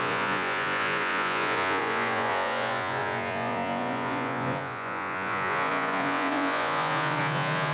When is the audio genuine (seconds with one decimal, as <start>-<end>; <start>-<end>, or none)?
none